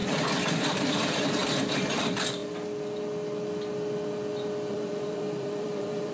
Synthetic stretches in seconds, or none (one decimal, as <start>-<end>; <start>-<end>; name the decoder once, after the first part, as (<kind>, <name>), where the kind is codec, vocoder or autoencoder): 0.5-1.4 (vocoder, BigVGAN v2); 1.9-2.4; 4.7-6.1